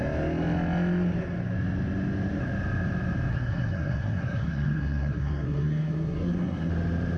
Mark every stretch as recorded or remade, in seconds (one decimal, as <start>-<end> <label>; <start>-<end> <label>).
0.0-3.3 recorded; 3.3-6.7 remade; 6.7-7.2 recorded